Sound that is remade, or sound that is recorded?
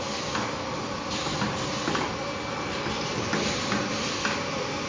recorded